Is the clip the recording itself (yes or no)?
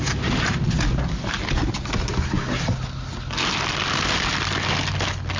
yes